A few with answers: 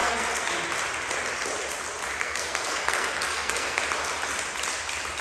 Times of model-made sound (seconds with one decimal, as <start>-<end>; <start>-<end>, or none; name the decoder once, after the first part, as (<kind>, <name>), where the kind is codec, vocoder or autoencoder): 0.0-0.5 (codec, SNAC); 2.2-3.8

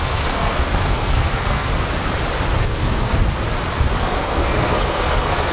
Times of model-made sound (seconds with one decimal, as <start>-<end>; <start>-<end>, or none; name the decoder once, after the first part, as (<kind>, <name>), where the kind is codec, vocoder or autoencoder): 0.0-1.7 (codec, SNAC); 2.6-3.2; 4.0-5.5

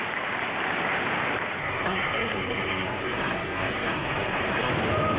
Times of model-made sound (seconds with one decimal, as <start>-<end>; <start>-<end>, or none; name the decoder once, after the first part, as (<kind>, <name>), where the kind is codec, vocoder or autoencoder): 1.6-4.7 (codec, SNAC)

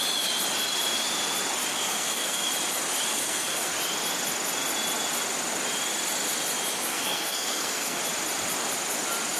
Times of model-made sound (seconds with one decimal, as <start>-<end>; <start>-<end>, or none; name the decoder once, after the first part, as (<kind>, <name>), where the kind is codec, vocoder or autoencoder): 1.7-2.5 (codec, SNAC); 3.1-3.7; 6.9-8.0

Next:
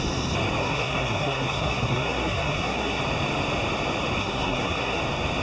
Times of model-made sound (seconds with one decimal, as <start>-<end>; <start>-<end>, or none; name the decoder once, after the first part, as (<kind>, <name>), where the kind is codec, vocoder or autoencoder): 0.6-3.0 (codec, SNAC); 4.2-5.0